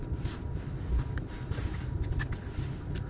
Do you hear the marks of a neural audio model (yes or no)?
no